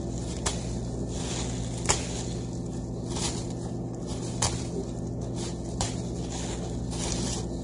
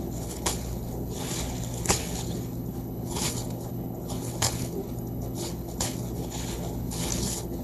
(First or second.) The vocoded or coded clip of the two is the second